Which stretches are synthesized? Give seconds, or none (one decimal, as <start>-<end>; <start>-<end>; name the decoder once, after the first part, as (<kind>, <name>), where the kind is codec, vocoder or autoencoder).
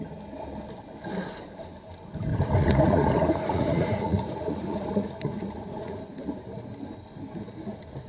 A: 2.3-6.0 (vocoder, Vocos)